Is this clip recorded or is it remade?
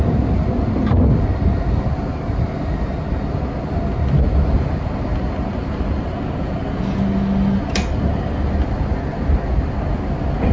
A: recorded